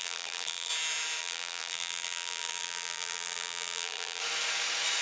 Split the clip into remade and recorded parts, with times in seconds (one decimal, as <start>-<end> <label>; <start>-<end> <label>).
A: 0.0-0.7 remade; 0.7-1.2 recorded; 1.2-4.2 remade; 4.2-5.0 recorded